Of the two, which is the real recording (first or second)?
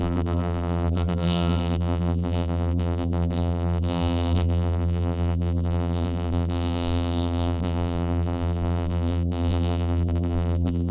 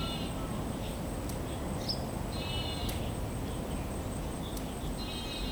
second